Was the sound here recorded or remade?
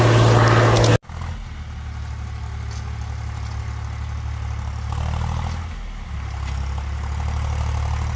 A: recorded